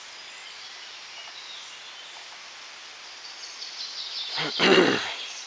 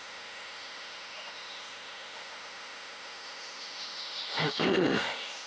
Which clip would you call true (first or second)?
first